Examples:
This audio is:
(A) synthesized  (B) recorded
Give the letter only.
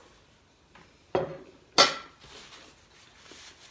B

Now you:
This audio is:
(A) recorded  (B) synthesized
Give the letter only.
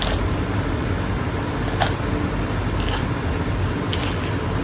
A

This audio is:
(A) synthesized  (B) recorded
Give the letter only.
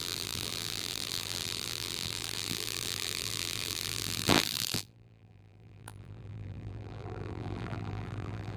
A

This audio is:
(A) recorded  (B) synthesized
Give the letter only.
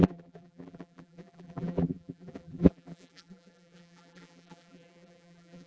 B